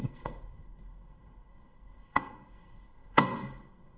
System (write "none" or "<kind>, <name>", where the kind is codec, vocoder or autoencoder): codec, SNAC